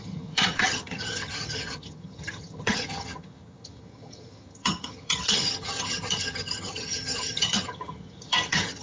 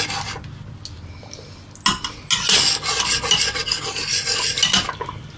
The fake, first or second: first